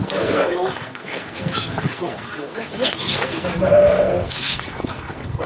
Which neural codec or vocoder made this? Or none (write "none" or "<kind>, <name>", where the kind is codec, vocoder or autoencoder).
codec, SNAC